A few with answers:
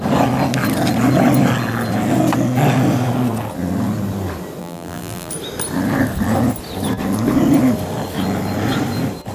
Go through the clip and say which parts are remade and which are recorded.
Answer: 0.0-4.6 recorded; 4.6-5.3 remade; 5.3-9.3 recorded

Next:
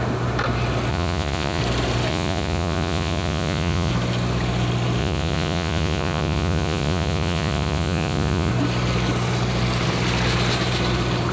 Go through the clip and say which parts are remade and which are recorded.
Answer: 0.0-0.9 recorded; 0.9-1.6 remade; 1.6-2.1 recorded; 2.1-3.9 remade; 3.9-5.0 recorded; 5.0-8.5 remade; 8.5-11.3 recorded

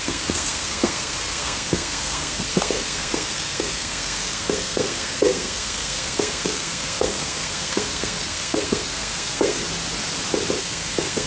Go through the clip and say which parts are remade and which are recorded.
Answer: 0.0-9.6 remade; 9.6-10.6 recorded; 10.6-11.3 remade

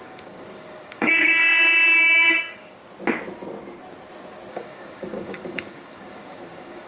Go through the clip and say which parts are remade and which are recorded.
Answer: 0.0-1.4 remade; 1.4-2.4 recorded; 2.4-2.8 remade; 2.8-4.5 recorded; 4.5-6.9 remade

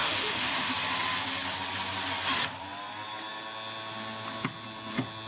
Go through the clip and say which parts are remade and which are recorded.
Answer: 0.0-0.7 remade; 0.7-5.3 recorded

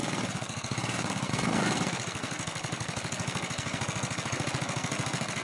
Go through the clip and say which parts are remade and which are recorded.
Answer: 0.0-5.4 remade

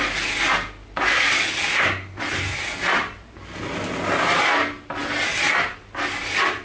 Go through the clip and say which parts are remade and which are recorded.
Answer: 0.0-1.7 recorded; 1.7-2.2 remade; 2.2-6.6 recorded